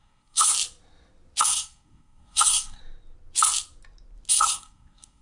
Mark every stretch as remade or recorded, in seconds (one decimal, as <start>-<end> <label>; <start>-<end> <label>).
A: 0.0-0.5 remade; 0.5-1.4 recorded; 1.4-2.8 remade; 2.8-4.3 recorded; 4.3-5.2 remade